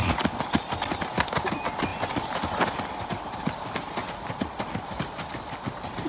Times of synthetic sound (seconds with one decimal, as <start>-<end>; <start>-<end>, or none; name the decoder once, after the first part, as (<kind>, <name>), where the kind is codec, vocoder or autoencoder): none